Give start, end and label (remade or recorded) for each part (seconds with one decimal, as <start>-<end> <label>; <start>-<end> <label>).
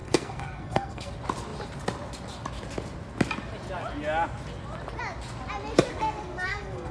0.0-1.1 remade; 1.1-5.9 recorded; 5.9-6.9 remade